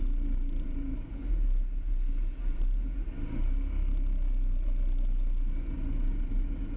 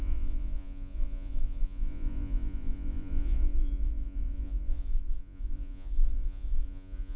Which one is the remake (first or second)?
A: second